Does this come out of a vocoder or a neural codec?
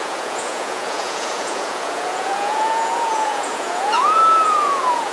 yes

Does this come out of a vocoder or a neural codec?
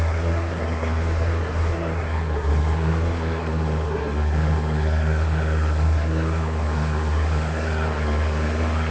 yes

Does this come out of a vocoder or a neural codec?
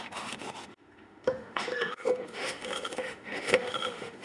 yes